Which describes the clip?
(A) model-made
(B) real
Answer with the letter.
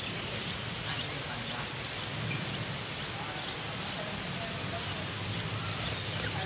B